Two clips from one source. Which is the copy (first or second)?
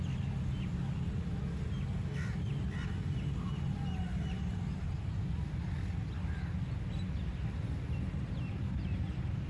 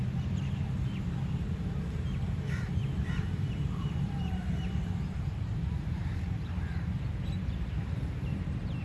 second